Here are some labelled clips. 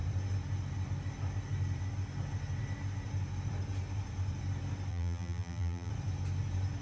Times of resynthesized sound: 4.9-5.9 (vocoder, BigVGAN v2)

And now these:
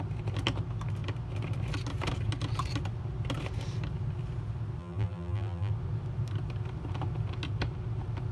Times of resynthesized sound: 4.8-5.7 (vocoder, BigVGAN v2)

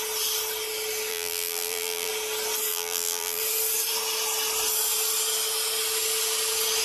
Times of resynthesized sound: 1.1-2.1 (vocoder, BigVGAN v2); 2.7-3.4

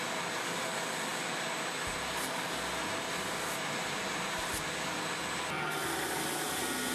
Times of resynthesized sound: none

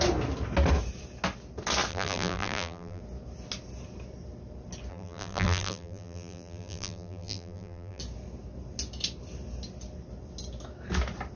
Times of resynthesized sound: 1.9-3.0 (vocoder, BigVGAN v2); 4.9-8.0

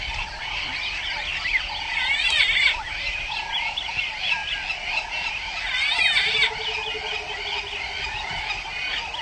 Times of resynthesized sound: 1.3-3.9 (vocoder, BigVGAN v2)